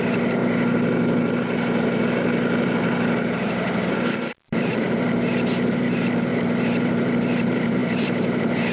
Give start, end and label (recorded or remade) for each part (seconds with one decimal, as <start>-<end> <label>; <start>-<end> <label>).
0.0-0.4 remade; 0.4-3.9 recorded; 3.9-8.7 remade